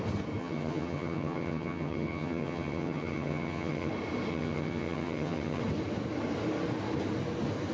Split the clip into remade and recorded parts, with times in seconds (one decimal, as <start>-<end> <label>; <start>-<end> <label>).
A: 0.0-0.4 recorded; 0.4-3.9 remade; 3.9-4.3 recorded; 4.3-5.6 remade; 5.6-7.7 recorded